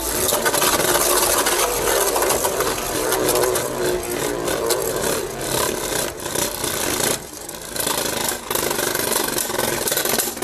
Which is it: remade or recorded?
recorded